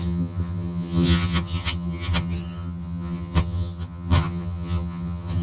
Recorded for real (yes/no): no